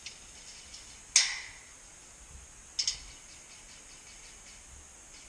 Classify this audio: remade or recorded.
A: recorded